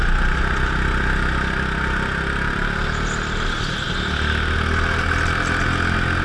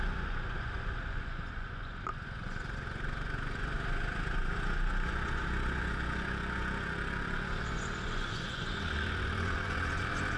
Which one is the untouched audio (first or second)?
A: first